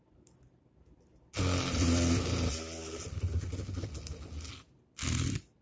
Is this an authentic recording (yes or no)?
yes